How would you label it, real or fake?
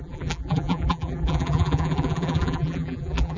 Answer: fake